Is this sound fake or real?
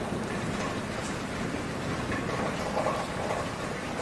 real